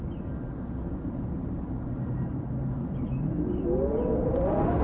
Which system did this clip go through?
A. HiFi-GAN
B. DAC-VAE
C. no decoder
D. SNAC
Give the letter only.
C